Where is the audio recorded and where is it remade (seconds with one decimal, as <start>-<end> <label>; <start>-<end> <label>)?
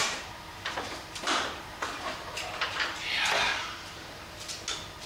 0.0-3.1 remade; 3.1-3.5 recorded; 3.5-4.1 remade; 4.1-5.1 recorded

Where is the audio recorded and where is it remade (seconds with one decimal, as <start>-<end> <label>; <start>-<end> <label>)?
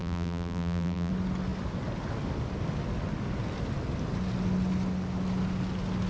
0.0-1.1 remade; 1.1-6.1 recorded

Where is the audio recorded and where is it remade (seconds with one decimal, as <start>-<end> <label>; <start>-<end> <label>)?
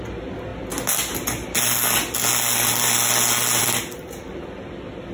0.0-5.1 recorded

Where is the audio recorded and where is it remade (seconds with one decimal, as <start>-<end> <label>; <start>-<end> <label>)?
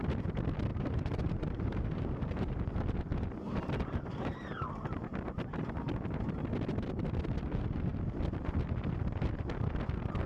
0.0-0.7 recorded; 0.7-2.6 remade; 2.6-10.3 recorded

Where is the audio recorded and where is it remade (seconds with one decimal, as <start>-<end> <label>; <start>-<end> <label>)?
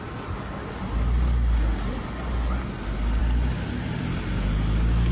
0.0-5.1 recorded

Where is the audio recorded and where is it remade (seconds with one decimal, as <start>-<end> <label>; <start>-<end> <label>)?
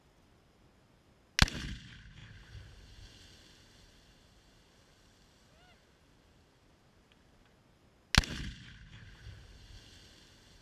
0.0-10.6 recorded